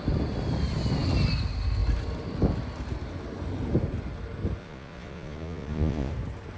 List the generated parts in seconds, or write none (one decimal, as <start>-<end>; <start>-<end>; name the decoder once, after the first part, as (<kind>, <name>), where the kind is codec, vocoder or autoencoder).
4.6-6.1 (vocoder, Vocos)

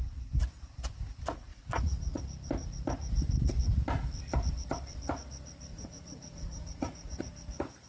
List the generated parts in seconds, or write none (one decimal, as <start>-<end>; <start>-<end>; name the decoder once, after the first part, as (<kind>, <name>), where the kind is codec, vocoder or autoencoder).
1.5-2.2 (vocoder, Vocos); 5.7-7.2

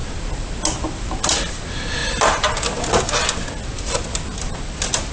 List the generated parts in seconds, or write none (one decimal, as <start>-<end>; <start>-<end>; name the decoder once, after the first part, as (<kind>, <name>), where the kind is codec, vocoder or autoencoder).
none

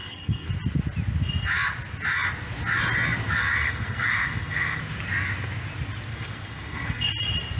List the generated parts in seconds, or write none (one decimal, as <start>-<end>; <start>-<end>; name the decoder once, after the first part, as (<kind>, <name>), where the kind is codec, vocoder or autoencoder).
0.0-0.5 (codec, SNAC); 3.6-4.8; 6.1-7.1

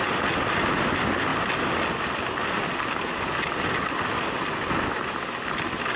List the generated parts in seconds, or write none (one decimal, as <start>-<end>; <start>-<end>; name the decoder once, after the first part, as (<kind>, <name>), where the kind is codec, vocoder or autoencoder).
none

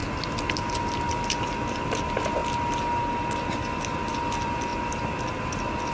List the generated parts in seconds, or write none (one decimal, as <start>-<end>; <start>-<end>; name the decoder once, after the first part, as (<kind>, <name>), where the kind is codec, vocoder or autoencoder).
1.1-2.4 (vocoder, BigVGAN v2); 4.1-4.7